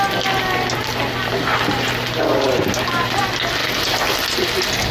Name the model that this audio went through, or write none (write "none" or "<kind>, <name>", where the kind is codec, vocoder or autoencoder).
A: none